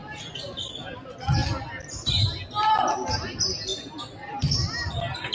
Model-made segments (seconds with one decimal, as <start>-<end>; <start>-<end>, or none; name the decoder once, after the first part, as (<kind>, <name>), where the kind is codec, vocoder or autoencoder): 0.0-0.7 (vocoder, BigVGAN v2); 3.7-4.7